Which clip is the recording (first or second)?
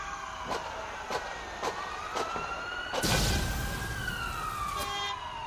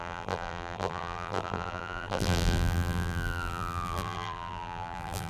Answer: first